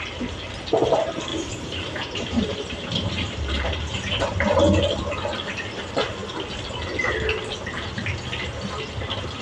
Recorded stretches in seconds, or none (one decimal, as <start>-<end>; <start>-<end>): 0.0-1.3; 4.6-9.4

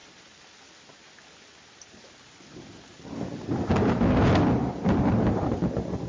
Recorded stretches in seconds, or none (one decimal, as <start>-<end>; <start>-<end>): none

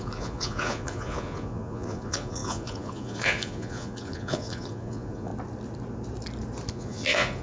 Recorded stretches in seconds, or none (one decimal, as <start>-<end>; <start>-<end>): 5.3-6.7

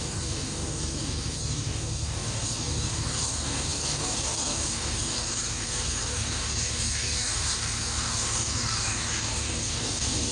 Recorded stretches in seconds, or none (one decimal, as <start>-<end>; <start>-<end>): none

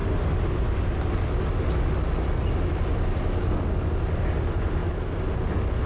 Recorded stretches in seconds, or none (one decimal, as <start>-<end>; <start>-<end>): 0.0-5.9

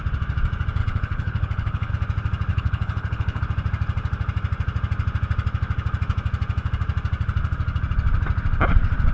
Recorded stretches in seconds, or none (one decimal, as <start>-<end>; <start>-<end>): 0.0-0.8; 1.9-2.5; 3.4-9.1